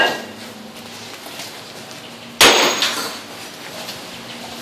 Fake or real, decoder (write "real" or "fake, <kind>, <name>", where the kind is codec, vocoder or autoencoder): real